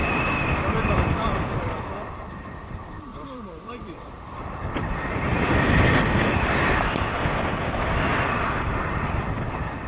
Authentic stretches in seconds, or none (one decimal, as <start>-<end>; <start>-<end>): 2.1-3.1; 6.2-9.9